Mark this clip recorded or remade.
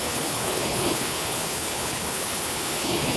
remade